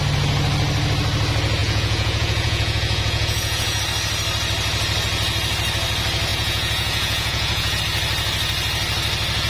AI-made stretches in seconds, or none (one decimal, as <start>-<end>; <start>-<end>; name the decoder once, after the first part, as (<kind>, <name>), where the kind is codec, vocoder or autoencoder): 1.6-3.8 (vocoder, Vocos); 6.3-7.8

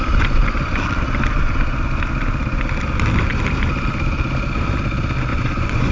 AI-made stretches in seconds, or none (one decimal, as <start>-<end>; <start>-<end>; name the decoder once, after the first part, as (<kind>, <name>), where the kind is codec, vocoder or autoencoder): 5.3-5.9 (vocoder, Vocos)

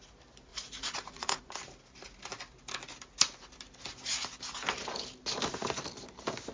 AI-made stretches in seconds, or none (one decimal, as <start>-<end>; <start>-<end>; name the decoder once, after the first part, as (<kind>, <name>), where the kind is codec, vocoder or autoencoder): 0.5-1.4 (vocoder, Vocos)

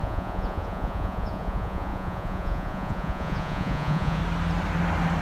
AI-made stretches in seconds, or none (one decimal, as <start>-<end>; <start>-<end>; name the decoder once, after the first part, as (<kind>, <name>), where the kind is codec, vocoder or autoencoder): 0.0-4.2 (vocoder, Vocos)

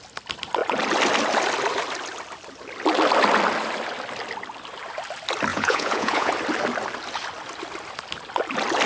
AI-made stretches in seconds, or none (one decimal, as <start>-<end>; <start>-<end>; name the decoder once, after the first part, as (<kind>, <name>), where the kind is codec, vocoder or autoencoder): 5.5-6.3 (vocoder, Vocos)

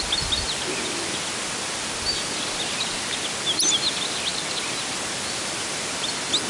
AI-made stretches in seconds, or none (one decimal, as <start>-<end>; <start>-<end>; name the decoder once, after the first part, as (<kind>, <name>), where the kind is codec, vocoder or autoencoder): none

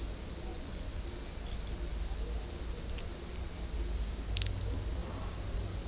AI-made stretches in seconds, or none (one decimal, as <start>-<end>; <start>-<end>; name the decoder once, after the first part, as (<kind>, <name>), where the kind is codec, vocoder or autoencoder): 0.5-1.0 (vocoder, Vocos)

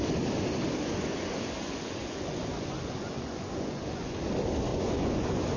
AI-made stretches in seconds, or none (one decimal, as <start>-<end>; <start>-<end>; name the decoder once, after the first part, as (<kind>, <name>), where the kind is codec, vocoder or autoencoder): 0.8-4.2 (vocoder, Vocos); 4.7-5.6